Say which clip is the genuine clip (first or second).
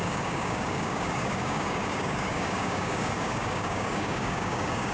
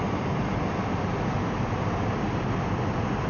second